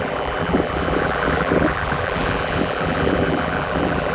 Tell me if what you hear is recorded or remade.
remade